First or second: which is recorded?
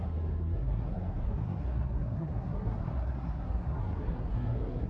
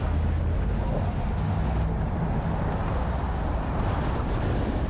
second